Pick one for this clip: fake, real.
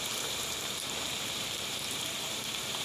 fake